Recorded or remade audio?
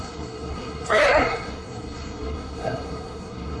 remade